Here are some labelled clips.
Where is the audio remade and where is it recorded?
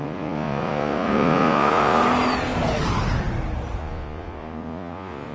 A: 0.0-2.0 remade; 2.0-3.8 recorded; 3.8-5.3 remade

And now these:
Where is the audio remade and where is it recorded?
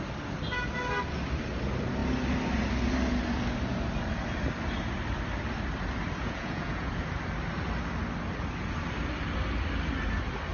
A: 0.0-6.2 recorded; 6.2-6.9 remade; 6.9-10.5 recorded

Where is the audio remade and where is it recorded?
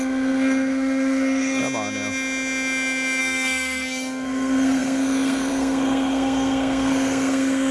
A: 0.0-1.6 remade; 1.6-3.2 recorded; 3.2-7.7 remade